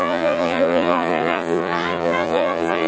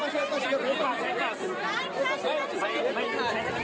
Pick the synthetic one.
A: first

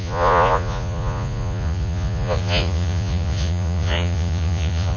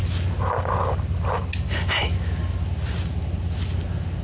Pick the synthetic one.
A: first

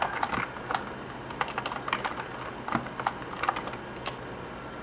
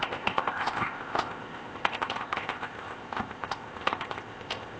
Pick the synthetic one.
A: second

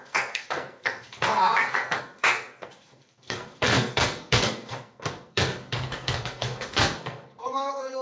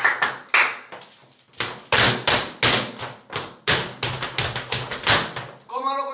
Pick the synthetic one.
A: first